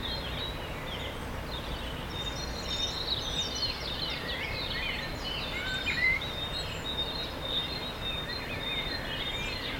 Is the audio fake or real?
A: real